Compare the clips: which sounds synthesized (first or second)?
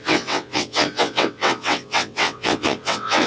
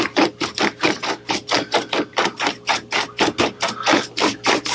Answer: first